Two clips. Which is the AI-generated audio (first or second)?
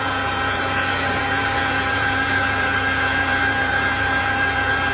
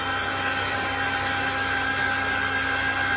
first